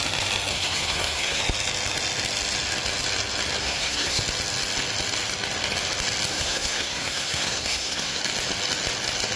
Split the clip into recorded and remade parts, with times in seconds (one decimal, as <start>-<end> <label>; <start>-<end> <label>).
0.0-0.5 recorded; 0.5-1.4 remade; 1.4-3.6 recorded; 3.6-4.2 remade; 4.2-6.3 recorded; 6.3-8.2 remade; 8.2-9.4 recorded